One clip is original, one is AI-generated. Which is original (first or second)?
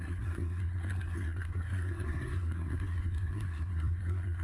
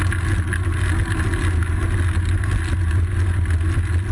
second